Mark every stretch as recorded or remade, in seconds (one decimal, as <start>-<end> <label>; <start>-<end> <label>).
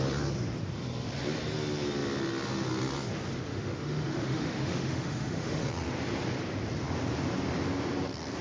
0.0-3.5 recorded; 3.5-5.6 remade; 5.6-8.4 recorded